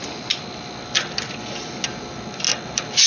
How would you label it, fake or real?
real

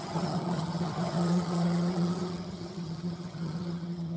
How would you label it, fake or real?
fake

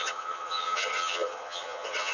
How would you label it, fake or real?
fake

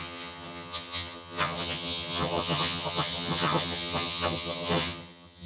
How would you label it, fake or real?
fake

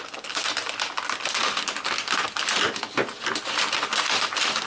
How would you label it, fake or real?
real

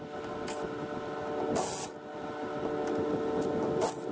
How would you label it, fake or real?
real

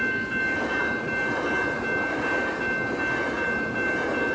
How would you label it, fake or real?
real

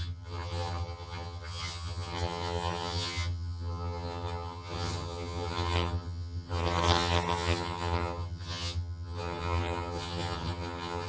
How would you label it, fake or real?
fake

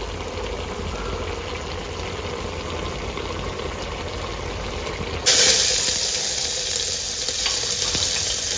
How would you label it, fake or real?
real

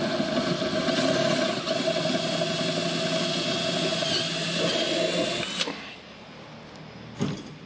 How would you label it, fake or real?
real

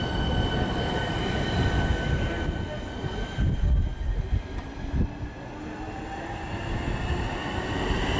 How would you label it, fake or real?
real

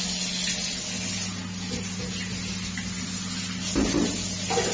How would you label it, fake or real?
real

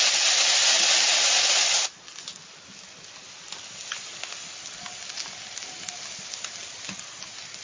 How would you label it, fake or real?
real